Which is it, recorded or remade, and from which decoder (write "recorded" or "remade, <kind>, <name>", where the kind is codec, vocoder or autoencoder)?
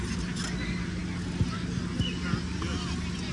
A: recorded